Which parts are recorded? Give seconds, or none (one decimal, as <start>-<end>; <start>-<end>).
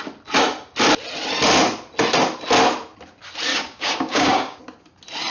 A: 0.0-3.5; 4.6-5.3